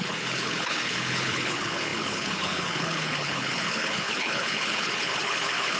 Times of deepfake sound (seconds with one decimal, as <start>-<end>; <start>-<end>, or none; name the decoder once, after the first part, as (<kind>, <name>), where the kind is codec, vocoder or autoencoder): 0.0-5.8 (codec, HILCodec)